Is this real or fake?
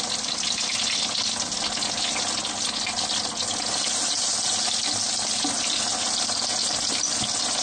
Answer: real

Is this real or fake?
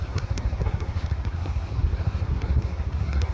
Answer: fake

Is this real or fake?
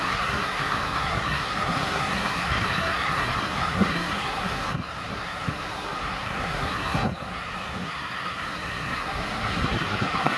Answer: fake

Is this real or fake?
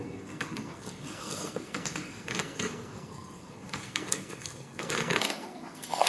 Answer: fake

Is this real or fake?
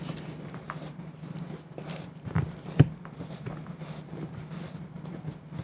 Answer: real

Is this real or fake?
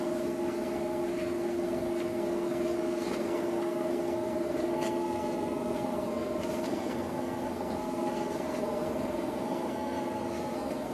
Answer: fake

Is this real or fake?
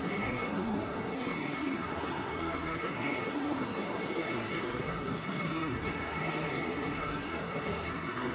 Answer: fake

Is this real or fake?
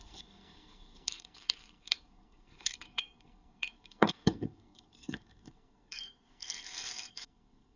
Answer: fake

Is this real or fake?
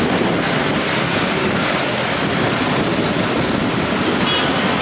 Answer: real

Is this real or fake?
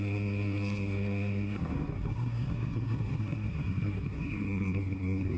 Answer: fake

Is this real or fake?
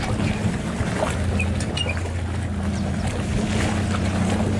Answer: real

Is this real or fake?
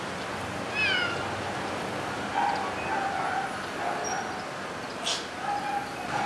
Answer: real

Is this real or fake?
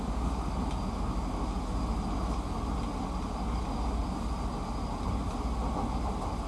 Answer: real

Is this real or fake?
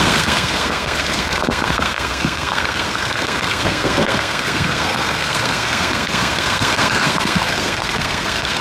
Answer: fake